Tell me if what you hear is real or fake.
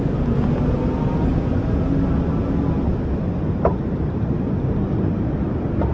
real